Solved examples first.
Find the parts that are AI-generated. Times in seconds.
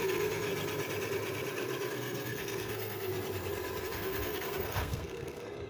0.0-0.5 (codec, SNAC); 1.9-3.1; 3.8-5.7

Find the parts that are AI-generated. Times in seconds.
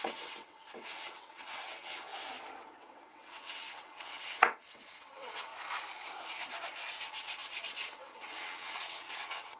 0.0-2.1 (vocoder, WaveNeXt); 2.8-5.5; 7.0-9.6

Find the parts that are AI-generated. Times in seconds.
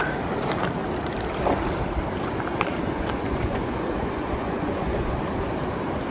2.5-5.2 (vocoder, Vocos)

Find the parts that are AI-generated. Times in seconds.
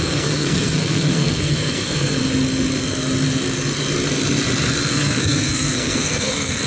0.0-2.2 (codec, SNAC); 4.9-6.7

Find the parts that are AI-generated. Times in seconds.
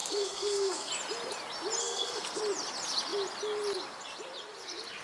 0.0-0.9 (codec, SNAC); 1.8-2.4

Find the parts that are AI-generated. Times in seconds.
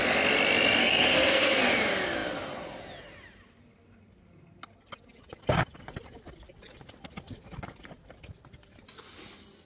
0.8-1.6 (codec, SNAC)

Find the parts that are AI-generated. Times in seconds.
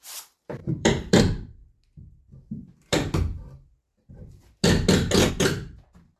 0.0-1.6 (vocoder, BigVGAN v2); 5.3-6.2